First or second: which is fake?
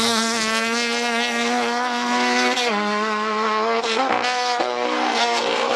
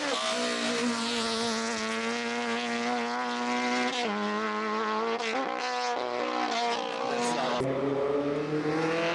first